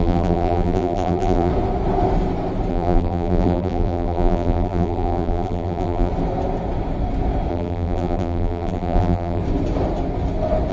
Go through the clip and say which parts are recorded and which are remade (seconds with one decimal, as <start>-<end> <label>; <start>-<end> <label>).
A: 0.0-1.5 remade; 1.5-2.7 recorded; 2.7-6.1 remade; 6.1-7.5 recorded; 7.5-9.4 remade; 9.4-10.7 recorded